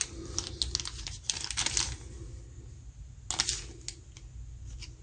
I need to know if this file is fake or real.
real